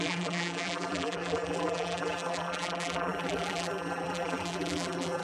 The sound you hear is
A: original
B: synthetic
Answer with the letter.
B